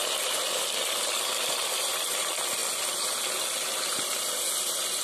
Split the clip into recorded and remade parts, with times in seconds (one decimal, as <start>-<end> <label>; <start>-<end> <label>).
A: 0.0-5.0 recorded